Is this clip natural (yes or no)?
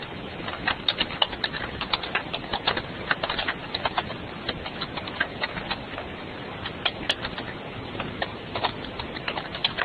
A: no